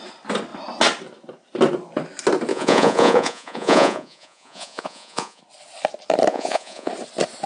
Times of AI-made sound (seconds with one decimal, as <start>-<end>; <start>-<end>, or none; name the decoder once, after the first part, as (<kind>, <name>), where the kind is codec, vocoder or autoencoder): 2.5-5.4 (vocoder, Vocos); 6.3-6.9

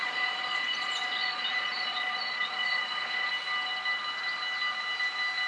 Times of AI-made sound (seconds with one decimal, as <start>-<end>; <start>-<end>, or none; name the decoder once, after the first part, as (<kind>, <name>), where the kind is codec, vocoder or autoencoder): 0.0-3.3 (vocoder, Vocos)

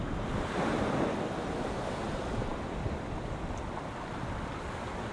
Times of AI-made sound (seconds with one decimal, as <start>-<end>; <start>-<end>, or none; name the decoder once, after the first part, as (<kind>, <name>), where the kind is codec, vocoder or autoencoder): none

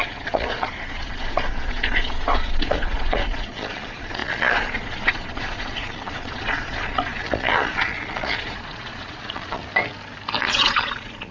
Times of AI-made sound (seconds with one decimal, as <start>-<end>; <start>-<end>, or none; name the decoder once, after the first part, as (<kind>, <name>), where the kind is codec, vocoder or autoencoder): 0.0-9.6 (vocoder, Vocos); 10.4-11.3

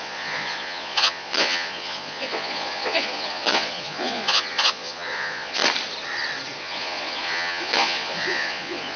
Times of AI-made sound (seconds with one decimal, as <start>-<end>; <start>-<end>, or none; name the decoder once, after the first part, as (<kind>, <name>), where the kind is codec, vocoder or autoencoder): 0.0-5.6 (vocoder, Vocos); 6.6-9.0

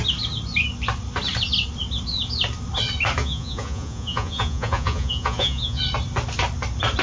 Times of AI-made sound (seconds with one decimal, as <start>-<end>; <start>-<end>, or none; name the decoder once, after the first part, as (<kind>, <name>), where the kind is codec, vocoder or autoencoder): 3.2-5.8 (vocoder, Vocos)